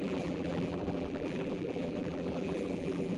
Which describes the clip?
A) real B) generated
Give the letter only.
B